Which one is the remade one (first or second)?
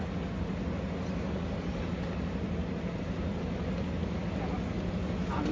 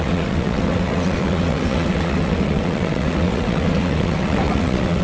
second